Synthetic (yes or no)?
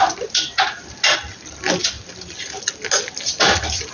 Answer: no